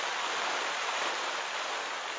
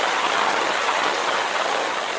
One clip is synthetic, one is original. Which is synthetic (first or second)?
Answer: second